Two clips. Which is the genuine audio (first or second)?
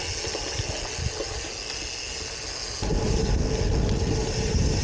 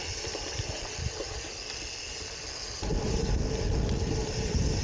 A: first